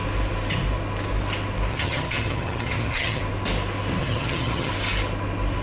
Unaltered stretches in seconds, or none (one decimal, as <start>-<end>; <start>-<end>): 0.0-1.7; 3.2-4.0; 4.7-5.6